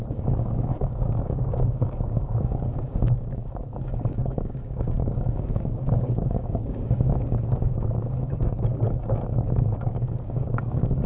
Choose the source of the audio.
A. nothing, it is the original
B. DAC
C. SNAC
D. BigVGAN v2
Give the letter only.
B